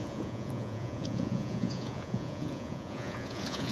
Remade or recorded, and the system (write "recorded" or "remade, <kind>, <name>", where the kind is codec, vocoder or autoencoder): remade, vocoder, Vocos